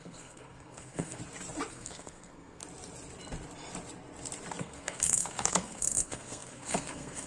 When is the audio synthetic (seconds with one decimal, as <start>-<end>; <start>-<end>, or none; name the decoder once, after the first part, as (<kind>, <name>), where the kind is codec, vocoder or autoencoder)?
0.0-1.2 (codec, SNAC); 1.7-2.6; 4.6-7.3